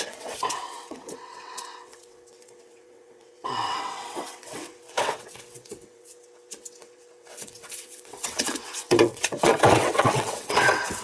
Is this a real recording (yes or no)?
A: no